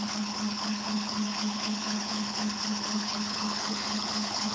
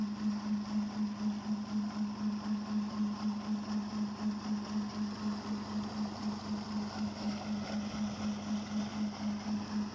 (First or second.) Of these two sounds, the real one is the second